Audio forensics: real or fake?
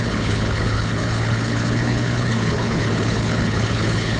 fake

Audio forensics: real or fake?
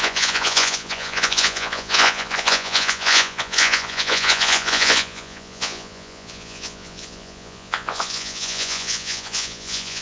fake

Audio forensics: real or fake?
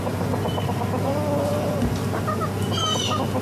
real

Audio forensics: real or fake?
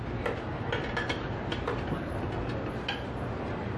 real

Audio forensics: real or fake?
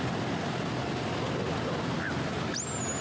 real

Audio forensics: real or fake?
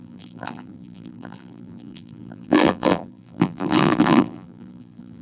fake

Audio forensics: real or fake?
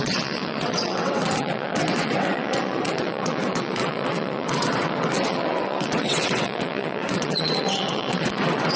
fake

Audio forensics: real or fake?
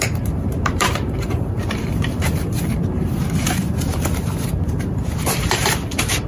fake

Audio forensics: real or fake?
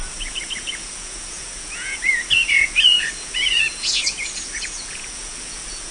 fake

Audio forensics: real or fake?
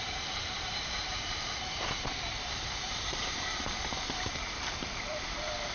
fake